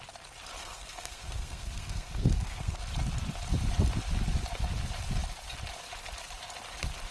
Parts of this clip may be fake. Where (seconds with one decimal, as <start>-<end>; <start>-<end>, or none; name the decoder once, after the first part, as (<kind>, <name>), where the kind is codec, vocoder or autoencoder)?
0.6-2.8 (codec, SNAC)